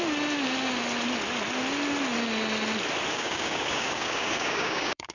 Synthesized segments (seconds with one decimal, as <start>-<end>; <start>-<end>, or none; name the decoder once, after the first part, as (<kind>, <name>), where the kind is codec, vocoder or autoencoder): 3.1-5.1 (codec, DAC)

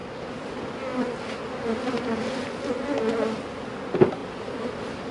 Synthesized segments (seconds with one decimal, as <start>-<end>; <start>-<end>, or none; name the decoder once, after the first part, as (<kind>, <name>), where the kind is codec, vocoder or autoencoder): 0.9-2.4 (vocoder, BigVGAN v2); 4.2-5.1